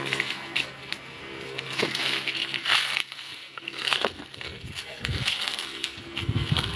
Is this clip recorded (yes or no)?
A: no